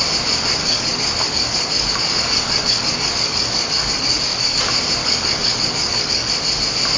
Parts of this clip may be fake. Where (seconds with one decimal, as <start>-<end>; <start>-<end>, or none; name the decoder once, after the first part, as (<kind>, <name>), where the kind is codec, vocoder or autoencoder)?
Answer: 0.6-4.6 (codec, DAC); 5.0-6.3